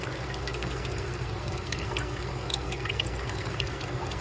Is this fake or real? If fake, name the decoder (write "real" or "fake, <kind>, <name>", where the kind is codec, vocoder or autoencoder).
fake, codec, SNAC